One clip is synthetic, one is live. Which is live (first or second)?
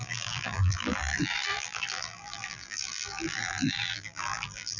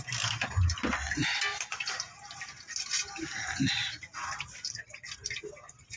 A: second